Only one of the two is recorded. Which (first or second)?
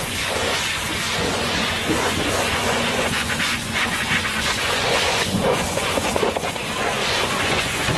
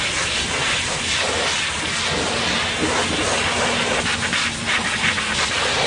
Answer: second